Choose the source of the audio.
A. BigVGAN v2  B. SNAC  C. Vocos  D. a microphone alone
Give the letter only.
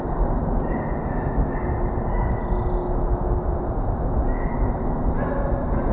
D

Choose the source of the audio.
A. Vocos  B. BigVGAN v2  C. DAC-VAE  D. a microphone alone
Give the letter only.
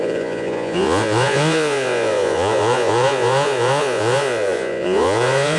A